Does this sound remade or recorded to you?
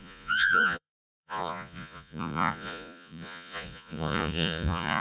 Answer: remade